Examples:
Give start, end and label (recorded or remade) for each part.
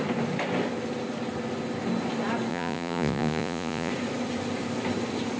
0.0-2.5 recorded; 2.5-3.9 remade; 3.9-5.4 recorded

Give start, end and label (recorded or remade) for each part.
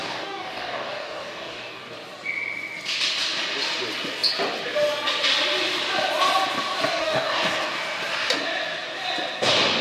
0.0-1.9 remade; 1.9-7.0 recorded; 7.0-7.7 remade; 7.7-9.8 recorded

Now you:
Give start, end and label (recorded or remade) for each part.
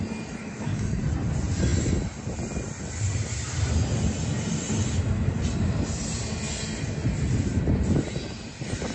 0.0-0.4 recorded; 0.4-1.0 remade; 1.0-8.9 recorded